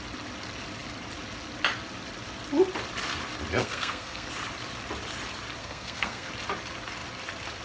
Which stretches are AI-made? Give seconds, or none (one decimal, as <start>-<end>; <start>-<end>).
3.6-4.3; 5.6-6.3